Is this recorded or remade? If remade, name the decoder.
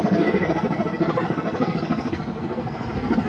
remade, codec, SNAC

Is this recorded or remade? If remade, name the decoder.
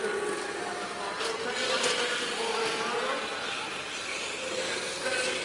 recorded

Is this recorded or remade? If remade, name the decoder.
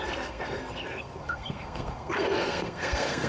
remade, codec, SNAC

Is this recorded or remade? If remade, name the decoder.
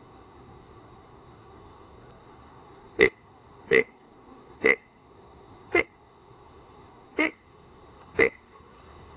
remade, codec, SNAC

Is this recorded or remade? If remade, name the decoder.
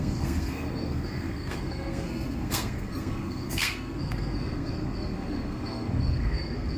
remade, codec, SNAC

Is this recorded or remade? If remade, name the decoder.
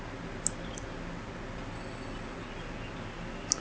recorded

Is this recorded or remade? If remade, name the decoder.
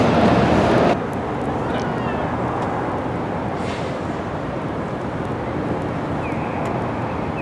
recorded